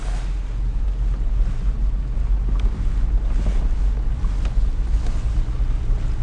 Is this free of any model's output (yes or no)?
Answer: yes